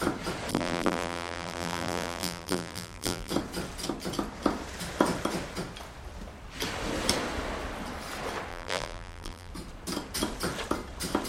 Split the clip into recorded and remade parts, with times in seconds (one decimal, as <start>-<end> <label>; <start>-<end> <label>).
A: 0.0-0.5 recorded; 0.5-3.3 remade; 3.3-8.5 recorded; 8.5-9.5 remade; 9.5-11.3 recorded